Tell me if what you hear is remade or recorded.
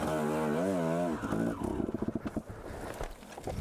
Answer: recorded